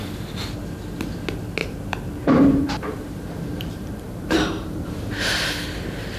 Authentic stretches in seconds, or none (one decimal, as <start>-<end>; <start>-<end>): 0.0-1.6; 5.3-6.2